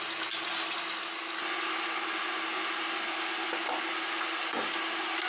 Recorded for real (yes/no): yes